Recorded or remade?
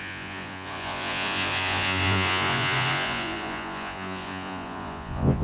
remade